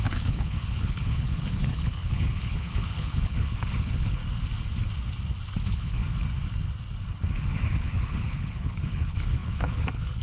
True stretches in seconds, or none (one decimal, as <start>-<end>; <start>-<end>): 4.2-5.6; 6.0-7.7